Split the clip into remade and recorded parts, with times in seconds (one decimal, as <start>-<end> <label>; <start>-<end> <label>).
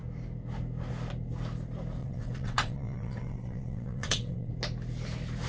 0.0-2.0 recorded; 2.0-4.5 remade; 4.5-5.5 recorded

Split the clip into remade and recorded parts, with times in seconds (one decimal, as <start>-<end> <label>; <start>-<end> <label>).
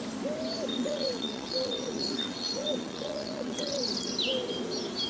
0.0-0.7 recorded; 0.7-3.8 remade; 3.8-5.1 recorded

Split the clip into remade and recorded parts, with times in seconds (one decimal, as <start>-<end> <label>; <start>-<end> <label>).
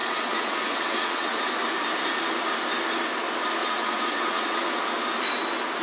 0.0-1.5 remade; 1.5-3.6 recorded; 3.6-4.8 remade; 4.8-5.8 recorded